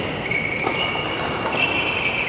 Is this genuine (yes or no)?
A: yes